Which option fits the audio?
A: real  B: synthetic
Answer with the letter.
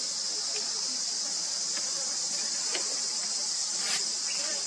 B